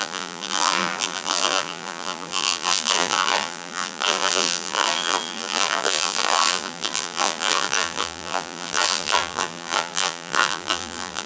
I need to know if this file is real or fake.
fake